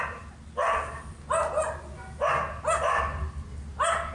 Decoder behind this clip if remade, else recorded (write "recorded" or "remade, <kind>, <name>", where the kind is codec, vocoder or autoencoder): recorded